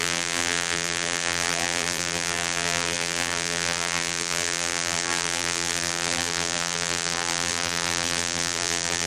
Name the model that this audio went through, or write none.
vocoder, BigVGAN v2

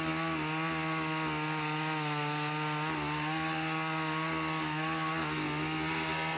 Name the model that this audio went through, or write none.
none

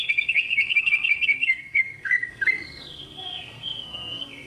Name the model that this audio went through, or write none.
codec, SNAC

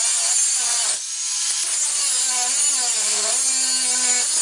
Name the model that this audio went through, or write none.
none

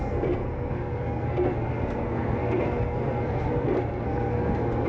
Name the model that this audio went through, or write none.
codec, SNAC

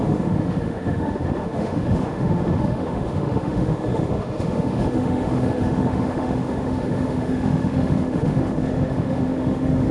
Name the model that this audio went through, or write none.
autoencoder, DAC-VAE